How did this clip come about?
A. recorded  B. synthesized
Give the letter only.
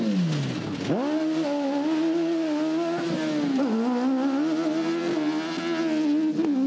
A